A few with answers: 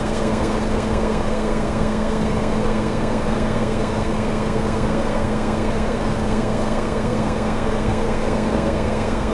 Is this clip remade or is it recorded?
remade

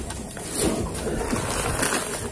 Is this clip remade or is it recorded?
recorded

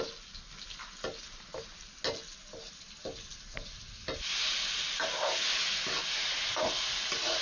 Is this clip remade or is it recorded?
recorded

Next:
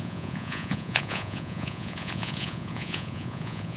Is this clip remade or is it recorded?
remade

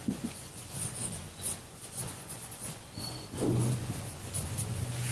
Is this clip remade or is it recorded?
remade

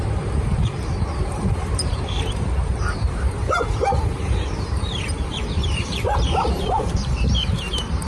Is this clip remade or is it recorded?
remade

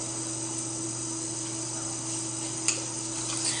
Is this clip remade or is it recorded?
recorded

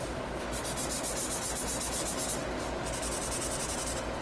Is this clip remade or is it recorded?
recorded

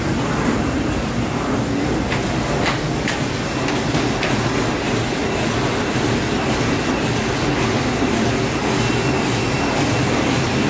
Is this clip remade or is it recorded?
recorded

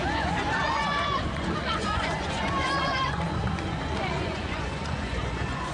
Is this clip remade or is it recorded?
remade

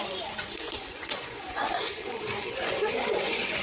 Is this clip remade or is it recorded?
remade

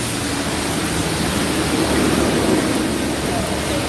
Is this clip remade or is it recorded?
recorded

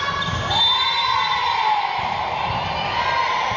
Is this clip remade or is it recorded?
recorded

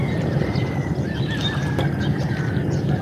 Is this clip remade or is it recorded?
recorded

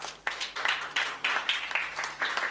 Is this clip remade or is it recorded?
recorded